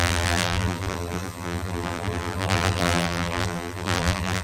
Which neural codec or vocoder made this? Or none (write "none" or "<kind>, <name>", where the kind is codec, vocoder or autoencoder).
vocoder, BigVGAN v2